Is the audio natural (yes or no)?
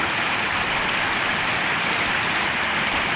yes